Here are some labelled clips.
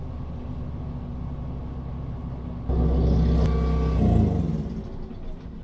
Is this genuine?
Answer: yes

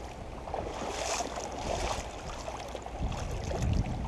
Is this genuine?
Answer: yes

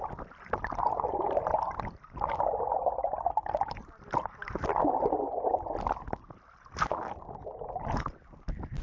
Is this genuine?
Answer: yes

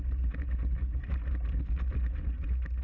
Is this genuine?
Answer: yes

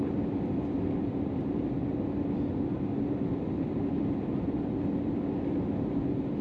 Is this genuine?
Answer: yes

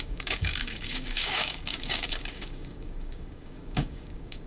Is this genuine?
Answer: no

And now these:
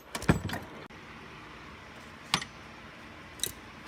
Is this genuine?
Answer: yes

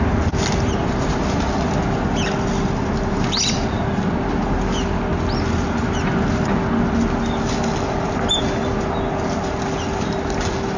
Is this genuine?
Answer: yes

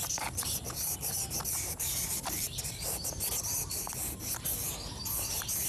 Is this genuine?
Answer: no